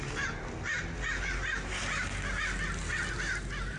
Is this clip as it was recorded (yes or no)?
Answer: yes